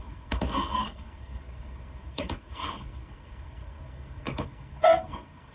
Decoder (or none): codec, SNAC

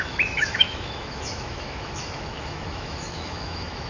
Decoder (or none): autoencoder, DAC-VAE